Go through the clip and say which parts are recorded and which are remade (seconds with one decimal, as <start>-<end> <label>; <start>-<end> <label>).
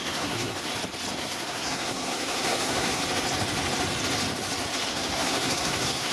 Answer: 0.0-0.7 remade; 0.7-1.2 recorded; 1.2-3.0 remade; 3.0-4.9 recorded; 4.9-6.1 remade